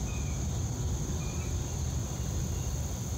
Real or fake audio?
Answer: real